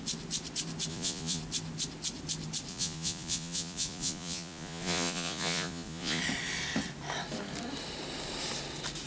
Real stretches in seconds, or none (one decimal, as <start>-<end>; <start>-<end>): 0.0-0.9; 1.4-2.7; 6.2-9.1